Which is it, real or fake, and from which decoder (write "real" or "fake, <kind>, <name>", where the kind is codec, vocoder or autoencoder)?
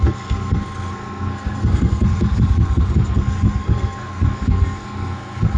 fake, codec, SNAC